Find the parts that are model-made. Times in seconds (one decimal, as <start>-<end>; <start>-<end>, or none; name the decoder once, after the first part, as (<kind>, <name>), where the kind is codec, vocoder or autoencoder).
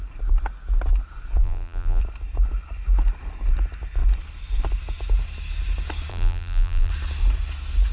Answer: 1.4-2.0 (vocoder, BigVGAN v2); 6.1-6.9